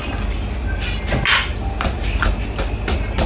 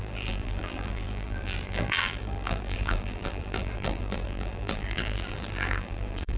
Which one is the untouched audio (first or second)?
first